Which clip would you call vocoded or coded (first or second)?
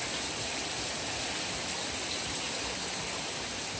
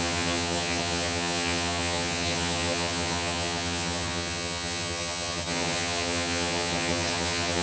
second